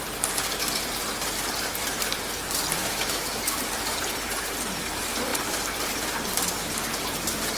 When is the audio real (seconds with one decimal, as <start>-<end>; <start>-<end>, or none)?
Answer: 0.0-2.8; 3.4-7.6